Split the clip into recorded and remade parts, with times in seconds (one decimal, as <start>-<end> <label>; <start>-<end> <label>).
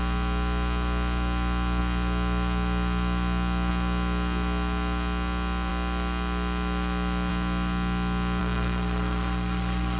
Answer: 0.0-8.4 recorded; 8.4-10.0 remade